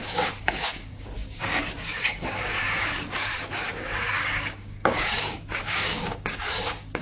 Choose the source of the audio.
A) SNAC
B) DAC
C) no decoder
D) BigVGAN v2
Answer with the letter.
B